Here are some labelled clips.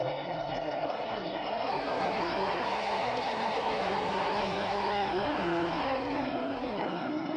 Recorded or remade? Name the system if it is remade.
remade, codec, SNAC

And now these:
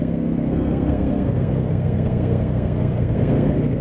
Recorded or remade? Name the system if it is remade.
remade, codec, SNAC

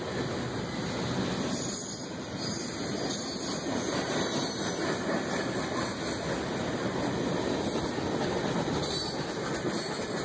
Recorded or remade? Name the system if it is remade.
recorded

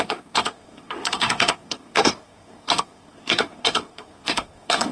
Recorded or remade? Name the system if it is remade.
remade, codec, SNAC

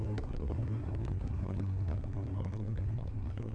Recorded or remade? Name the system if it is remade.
remade, codec, SNAC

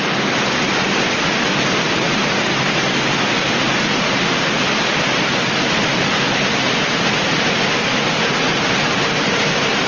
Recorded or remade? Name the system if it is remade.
recorded